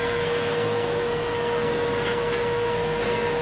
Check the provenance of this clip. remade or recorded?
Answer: remade